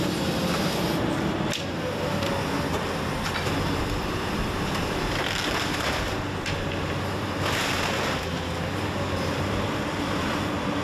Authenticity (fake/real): real